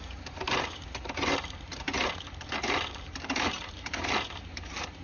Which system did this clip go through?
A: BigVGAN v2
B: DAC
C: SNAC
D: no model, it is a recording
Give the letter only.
A